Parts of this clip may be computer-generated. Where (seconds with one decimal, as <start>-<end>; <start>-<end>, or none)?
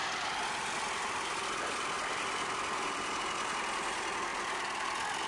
0.0-3.2; 4.3-5.3